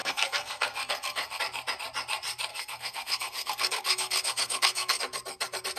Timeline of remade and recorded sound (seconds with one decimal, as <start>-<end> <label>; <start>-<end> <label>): 0.0-1.4 remade; 1.4-2.5 recorded; 2.5-5.0 remade; 5.0-5.8 recorded